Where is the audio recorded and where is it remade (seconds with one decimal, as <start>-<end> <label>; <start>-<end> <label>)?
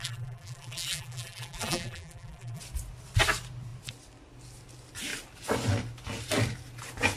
0.0-2.6 remade; 2.6-7.2 recorded